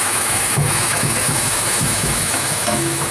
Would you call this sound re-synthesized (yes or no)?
yes